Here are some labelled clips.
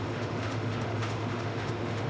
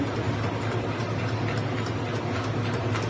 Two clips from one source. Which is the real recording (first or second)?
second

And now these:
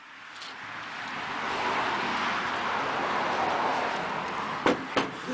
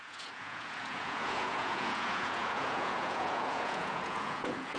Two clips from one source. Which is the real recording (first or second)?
first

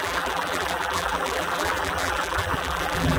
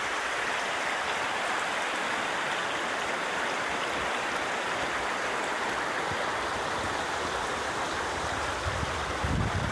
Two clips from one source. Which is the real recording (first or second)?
second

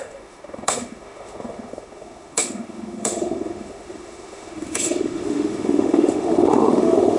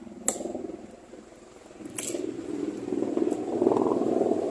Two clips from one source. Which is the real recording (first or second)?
second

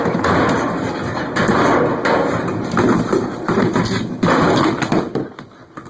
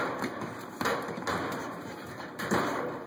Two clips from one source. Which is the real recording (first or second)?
first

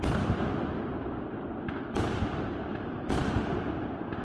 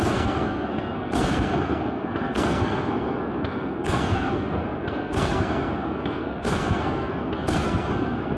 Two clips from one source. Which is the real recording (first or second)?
first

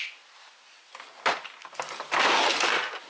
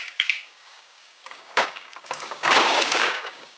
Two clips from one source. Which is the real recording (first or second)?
first